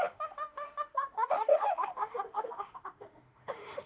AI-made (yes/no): yes